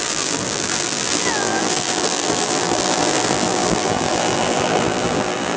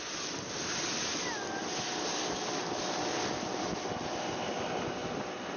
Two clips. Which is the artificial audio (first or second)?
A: first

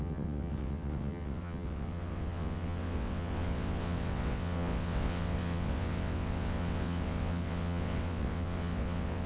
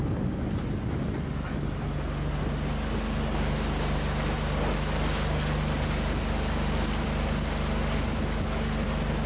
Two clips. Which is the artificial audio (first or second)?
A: first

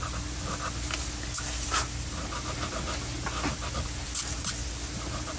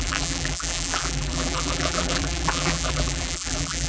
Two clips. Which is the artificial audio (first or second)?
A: second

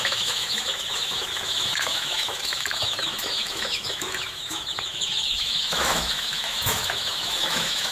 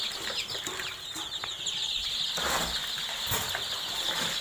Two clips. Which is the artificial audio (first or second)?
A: first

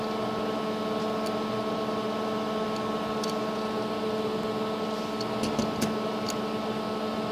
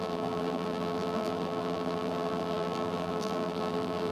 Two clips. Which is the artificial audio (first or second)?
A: second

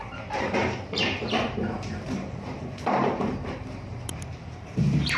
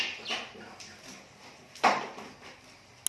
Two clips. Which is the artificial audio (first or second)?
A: first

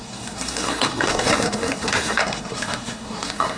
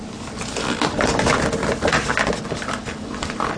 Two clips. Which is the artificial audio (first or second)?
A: first